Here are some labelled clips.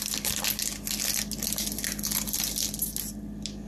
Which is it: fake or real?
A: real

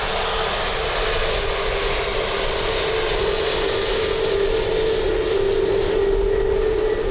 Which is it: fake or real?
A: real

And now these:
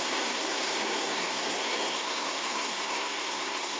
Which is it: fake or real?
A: fake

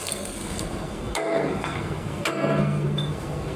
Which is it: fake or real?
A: fake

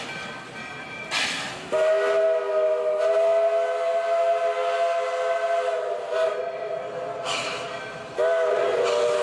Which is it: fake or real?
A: real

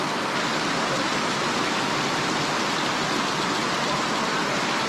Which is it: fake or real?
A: real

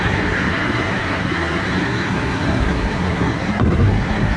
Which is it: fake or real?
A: fake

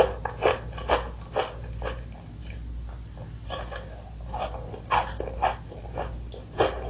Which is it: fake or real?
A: real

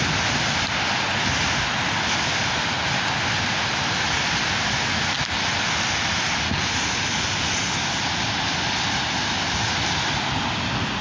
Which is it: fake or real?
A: real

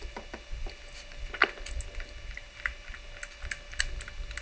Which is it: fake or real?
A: real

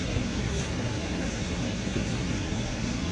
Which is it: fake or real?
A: fake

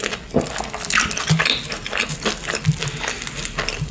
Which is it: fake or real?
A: real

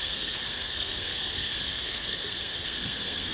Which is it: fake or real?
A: fake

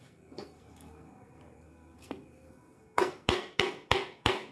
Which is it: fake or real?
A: fake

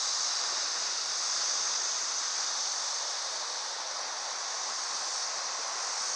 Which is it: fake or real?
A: real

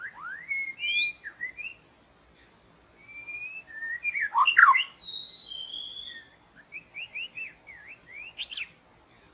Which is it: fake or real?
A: real